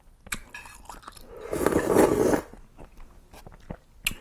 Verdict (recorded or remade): recorded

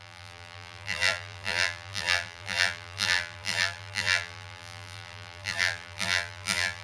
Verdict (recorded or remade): remade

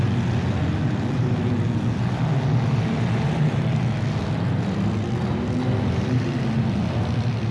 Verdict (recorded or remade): recorded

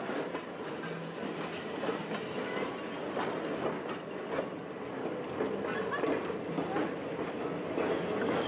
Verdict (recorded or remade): recorded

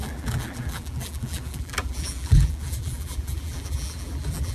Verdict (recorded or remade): remade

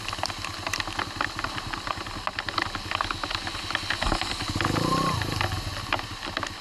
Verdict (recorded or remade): recorded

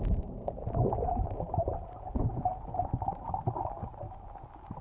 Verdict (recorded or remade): recorded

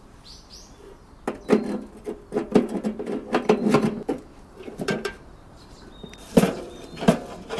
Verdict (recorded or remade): remade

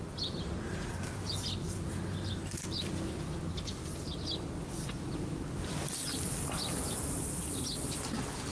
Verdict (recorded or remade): recorded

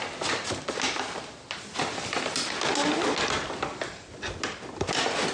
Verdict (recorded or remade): recorded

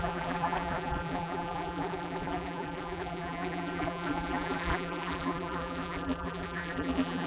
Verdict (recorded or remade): remade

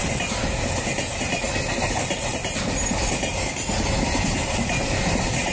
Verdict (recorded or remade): recorded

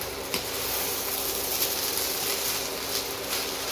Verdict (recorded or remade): recorded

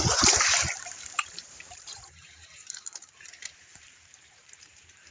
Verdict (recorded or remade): remade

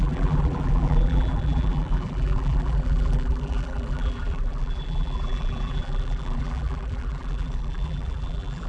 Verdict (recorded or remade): remade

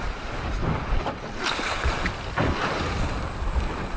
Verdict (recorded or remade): remade